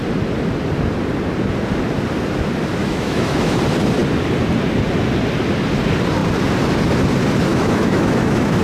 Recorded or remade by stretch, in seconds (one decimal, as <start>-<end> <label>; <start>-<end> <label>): 0.0-2.8 recorded; 2.8-3.6 remade; 3.6-7.5 recorded; 7.5-8.6 remade